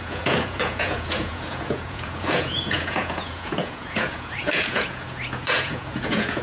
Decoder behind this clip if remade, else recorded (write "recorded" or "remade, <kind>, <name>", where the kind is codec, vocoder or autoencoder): remade, vocoder, Vocos